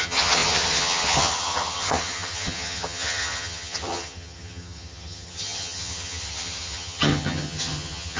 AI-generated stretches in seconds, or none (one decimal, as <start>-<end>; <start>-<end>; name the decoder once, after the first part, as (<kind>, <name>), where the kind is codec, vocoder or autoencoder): 0.0-8.2 (vocoder, HiFi-GAN)